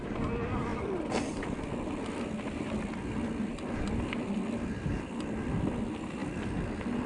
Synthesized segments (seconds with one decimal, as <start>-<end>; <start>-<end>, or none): none